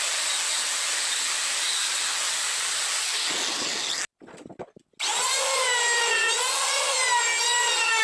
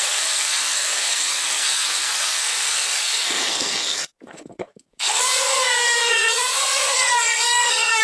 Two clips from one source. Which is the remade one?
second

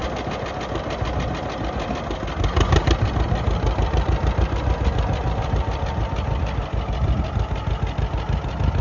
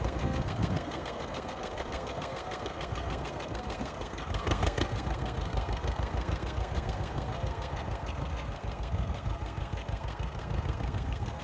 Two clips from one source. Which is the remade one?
second